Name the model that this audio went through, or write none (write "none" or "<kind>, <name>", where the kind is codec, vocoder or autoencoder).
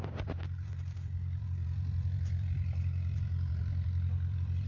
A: vocoder, BigVGAN v2